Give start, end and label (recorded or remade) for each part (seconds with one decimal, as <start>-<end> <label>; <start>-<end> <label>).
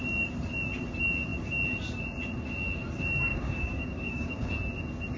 0.0-3.3 recorded; 3.3-4.5 remade; 4.5-5.2 recorded